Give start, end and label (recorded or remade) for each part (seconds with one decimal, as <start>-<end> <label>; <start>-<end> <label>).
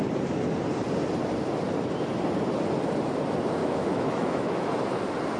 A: 0.0-3.6 recorded; 3.6-4.7 remade; 4.7-5.4 recorded